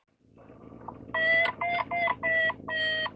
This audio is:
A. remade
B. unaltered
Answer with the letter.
B